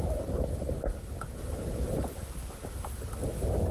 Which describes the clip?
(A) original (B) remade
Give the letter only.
A